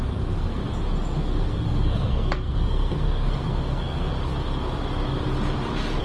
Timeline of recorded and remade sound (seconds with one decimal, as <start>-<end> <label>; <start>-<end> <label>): 0.0-0.6 remade; 0.6-1.2 recorded; 1.2-4.1 remade; 4.1-6.0 recorded